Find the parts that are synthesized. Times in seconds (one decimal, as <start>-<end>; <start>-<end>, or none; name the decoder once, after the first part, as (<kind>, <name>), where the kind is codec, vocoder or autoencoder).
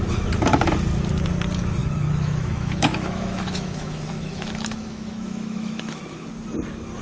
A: 1.8-6.0 (autoencoder, DAC-VAE)